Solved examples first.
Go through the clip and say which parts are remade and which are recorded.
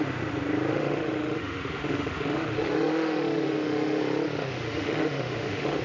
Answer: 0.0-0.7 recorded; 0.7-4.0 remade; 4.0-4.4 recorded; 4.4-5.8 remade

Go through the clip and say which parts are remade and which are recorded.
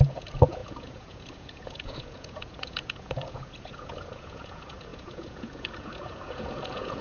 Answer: 0.0-7.0 remade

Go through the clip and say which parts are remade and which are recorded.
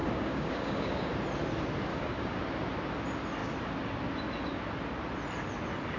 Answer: 0.0-1.1 remade; 1.1-1.9 recorded; 1.9-2.4 remade; 2.4-6.0 recorded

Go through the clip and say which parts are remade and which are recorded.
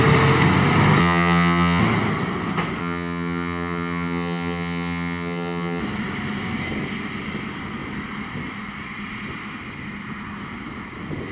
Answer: 0.0-1.0 recorded; 1.0-1.8 remade; 1.8-2.8 recorded; 2.8-5.8 remade; 5.8-11.3 recorded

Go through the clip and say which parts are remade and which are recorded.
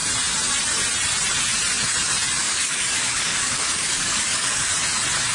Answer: 0.0-2.4 recorded; 2.4-4.7 remade; 4.7-5.3 recorded